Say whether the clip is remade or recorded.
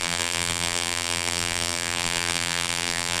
remade